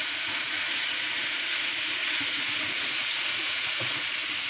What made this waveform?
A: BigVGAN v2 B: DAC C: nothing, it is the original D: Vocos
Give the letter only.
D